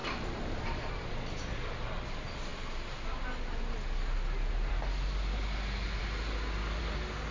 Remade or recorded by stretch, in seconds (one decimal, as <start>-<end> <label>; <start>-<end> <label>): 0.0-1.1 remade; 1.1-7.3 recorded